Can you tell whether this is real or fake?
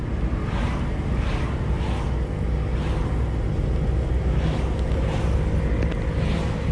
real